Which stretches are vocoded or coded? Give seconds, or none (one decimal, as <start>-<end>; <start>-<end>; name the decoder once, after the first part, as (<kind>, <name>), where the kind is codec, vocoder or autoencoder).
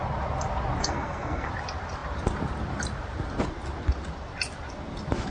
0.8-1.5 (codec, SNAC)